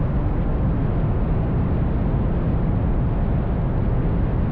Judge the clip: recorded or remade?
recorded